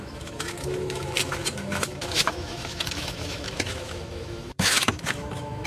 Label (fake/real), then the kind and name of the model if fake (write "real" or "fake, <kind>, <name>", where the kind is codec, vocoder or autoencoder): fake, autoencoder, DAC-VAE